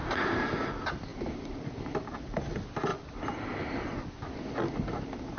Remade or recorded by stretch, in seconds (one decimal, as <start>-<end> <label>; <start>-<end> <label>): 0.0-0.6 remade; 0.6-1.1 recorded; 1.1-1.6 remade; 1.6-5.4 recorded

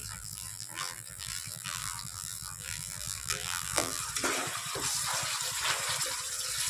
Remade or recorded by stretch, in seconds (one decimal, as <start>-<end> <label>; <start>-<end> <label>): 0.0-4.0 remade; 4.0-6.7 recorded